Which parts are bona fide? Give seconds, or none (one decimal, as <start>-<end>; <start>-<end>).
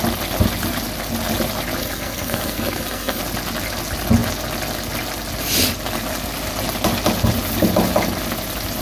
0.0-1.8; 3.2-8.8